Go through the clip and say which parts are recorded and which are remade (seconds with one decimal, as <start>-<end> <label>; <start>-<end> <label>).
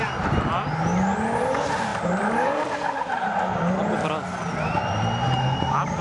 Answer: 0.0-1.9 recorded; 1.9-3.7 remade; 3.7-6.0 recorded